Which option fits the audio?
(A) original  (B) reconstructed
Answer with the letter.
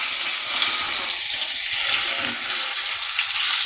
A